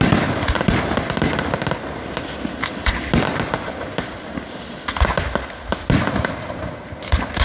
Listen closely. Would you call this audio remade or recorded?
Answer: recorded